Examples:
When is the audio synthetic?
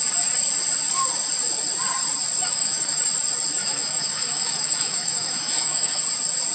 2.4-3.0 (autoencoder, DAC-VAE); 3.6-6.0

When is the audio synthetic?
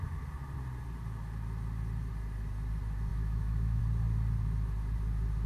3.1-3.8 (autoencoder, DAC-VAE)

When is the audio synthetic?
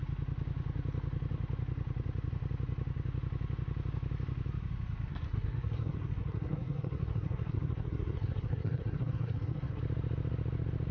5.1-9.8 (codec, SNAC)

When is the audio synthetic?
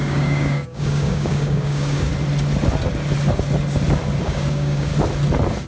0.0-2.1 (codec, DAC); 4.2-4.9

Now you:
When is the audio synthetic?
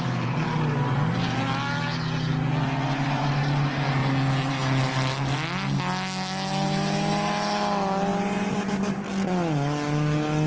none